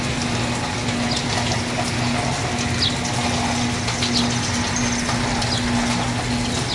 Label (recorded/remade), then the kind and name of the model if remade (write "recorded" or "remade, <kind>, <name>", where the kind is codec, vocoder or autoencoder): recorded